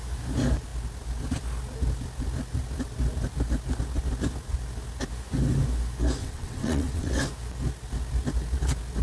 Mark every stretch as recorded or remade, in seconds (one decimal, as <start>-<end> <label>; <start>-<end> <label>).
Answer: 0.0-6.2 recorded; 6.2-7.3 remade; 7.3-9.0 recorded